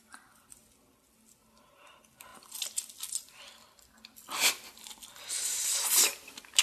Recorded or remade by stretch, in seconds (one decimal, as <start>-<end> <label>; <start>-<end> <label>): 0.0-6.6 recorded